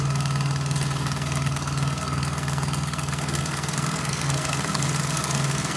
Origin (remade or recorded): remade